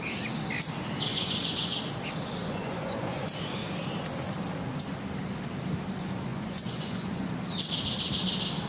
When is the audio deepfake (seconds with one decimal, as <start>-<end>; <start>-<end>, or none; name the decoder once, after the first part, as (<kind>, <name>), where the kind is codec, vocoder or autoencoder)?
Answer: 1.1-1.8 (vocoder, Vocos); 2.4-3.3; 6.3-7.3